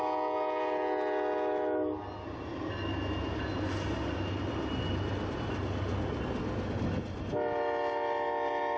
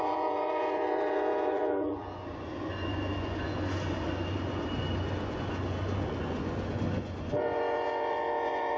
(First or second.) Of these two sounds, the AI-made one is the second